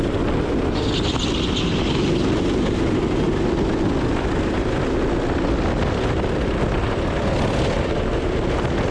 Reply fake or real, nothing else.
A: real